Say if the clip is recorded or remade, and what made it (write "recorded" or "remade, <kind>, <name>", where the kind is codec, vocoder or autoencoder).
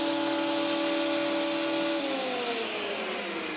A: recorded